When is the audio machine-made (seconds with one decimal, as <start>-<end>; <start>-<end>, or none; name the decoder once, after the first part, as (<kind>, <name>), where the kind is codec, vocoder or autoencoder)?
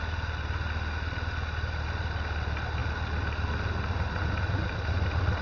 none